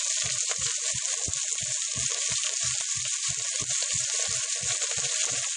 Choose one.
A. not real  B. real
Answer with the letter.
B